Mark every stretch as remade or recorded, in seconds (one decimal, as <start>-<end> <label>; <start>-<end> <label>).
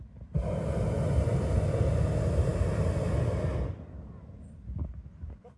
0.0-5.6 recorded